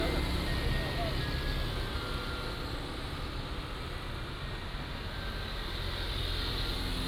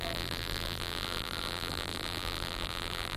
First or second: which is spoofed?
second